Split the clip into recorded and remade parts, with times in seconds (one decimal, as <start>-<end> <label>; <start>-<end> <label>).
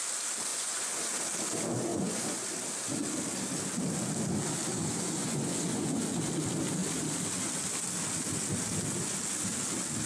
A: 0.0-0.5 recorded; 0.5-1.1 remade; 1.1-1.9 recorded; 1.9-2.5 remade; 2.5-4.7 recorded; 4.7-6.0 remade; 6.0-10.1 recorded